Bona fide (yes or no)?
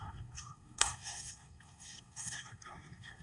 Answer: no